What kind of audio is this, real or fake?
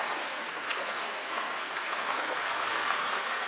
fake